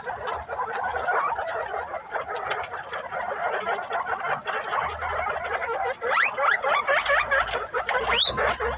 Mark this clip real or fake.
fake